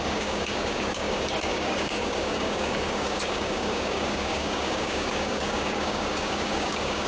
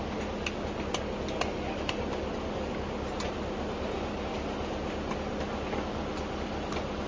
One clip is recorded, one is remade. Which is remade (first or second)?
first